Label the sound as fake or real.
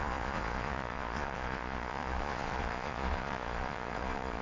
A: fake